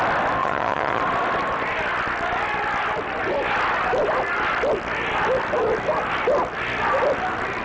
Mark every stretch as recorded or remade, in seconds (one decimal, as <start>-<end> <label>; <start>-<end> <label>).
0.0-0.4 recorded; 0.4-1.0 remade; 1.0-7.6 recorded